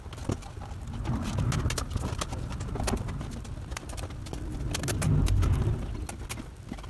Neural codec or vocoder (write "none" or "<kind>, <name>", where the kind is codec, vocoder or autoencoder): none